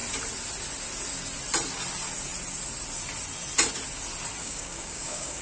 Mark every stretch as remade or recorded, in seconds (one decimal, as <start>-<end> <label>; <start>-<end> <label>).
0.0-4.4 recorded; 4.4-5.4 remade